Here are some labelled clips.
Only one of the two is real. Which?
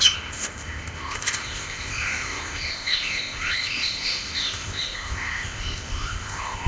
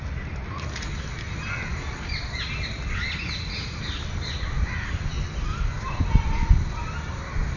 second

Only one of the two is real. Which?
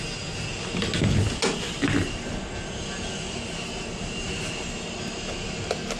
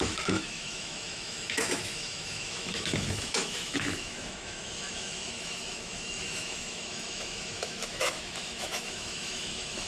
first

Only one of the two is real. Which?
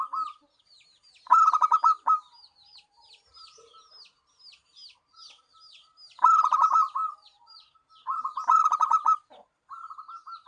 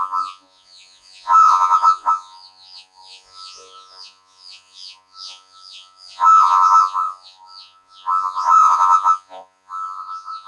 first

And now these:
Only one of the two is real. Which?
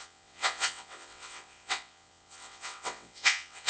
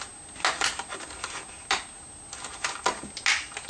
second